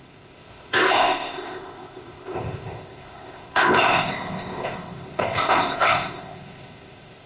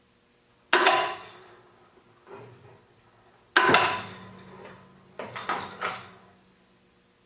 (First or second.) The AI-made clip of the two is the first